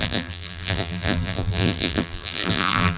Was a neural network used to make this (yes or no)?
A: yes